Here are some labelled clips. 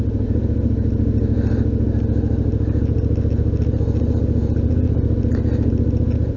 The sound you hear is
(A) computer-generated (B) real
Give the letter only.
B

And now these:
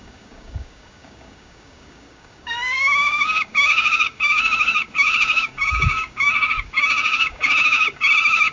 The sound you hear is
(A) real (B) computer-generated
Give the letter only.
B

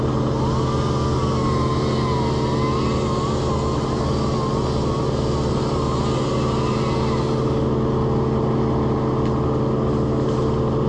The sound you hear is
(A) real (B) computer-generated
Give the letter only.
A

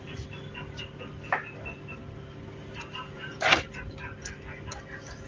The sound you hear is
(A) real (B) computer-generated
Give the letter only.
A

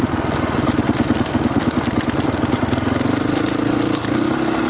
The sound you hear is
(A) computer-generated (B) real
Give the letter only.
B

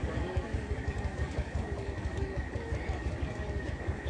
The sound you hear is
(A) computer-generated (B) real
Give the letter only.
A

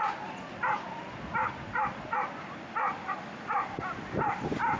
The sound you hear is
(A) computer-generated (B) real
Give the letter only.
B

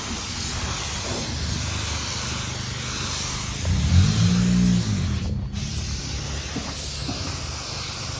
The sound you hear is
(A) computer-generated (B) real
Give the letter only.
B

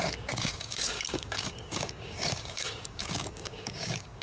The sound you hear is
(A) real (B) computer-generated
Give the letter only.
B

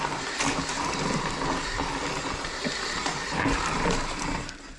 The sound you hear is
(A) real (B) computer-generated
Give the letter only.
A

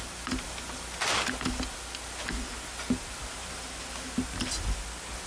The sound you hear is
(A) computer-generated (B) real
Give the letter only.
B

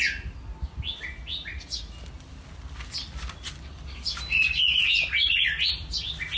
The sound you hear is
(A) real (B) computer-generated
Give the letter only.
A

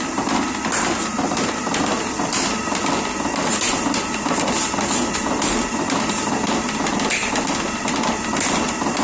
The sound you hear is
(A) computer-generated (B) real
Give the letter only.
B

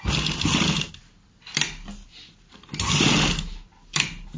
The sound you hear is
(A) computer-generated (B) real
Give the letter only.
B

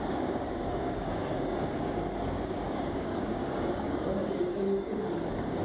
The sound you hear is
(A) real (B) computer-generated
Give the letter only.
B